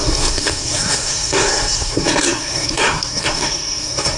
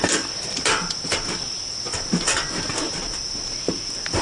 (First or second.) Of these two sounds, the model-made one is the first